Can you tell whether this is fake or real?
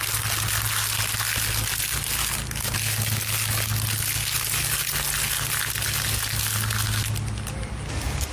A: real